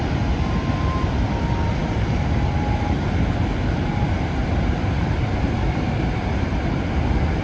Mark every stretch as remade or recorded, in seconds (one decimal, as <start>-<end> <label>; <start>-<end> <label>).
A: 0.0-1.8 recorded; 1.8-6.2 remade; 6.2-7.4 recorded